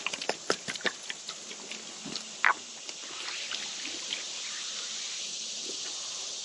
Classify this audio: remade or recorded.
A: recorded